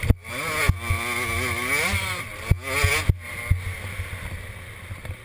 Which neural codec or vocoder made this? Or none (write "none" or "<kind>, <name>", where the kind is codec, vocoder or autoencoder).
none